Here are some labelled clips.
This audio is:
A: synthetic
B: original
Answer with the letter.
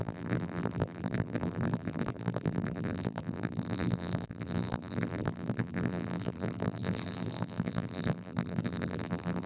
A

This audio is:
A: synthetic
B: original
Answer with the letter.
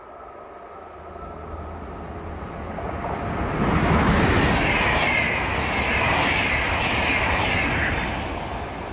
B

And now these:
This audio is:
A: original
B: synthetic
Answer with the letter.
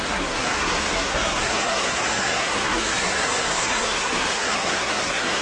B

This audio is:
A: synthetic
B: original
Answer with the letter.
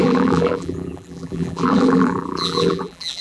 A